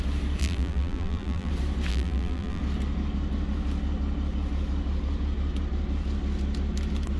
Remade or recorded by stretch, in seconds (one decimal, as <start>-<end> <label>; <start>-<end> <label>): 0.0-0.4 recorded; 0.4-1.5 remade; 1.5-1.9 recorded; 1.9-2.6 remade; 2.6-7.2 recorded